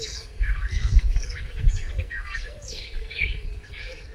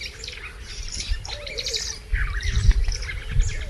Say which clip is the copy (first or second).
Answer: first